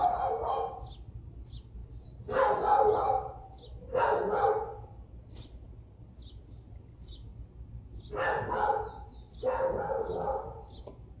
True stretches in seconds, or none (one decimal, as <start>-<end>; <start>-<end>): 0.0-11.2